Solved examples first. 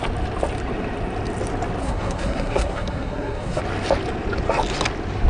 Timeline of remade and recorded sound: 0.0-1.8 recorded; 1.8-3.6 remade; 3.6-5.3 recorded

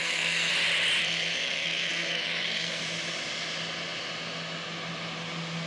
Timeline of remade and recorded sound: 0.0-0.5 remade; 0.5-1.0 recorded; 1.0-2.8 remade; 2.8-5.7 recorded

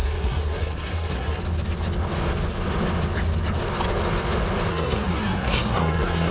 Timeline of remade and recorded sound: 0.0-1.4 remade; 1.4-4.7 recorded; 4.7-6.3 remade

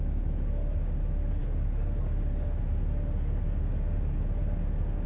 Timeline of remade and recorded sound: 0.0-5.1 recorded